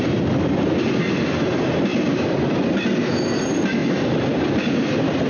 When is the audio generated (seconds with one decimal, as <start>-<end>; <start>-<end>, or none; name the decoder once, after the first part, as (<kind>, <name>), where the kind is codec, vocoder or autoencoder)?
0.0-1.0 (vocoder, BigVGAN v2); 3.8-4.7